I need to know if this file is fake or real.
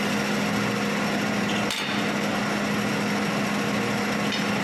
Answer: real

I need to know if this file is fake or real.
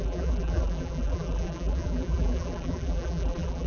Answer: fake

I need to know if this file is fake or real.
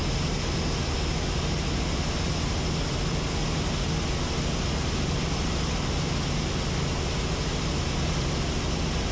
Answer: real